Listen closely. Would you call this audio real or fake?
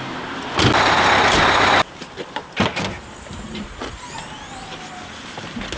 real